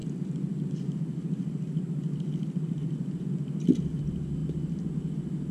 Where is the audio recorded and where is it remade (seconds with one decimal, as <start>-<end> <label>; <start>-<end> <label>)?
0.0-5.5 recorded